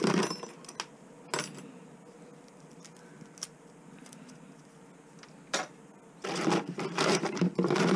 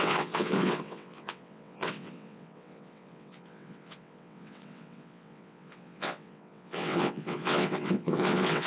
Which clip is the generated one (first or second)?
second